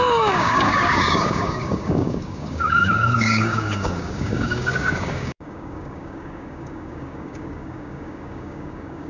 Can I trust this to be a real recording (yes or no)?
no